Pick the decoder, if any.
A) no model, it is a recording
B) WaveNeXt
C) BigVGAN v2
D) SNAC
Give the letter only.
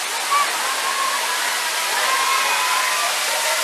A